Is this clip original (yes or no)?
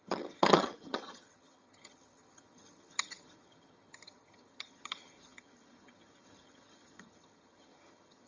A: no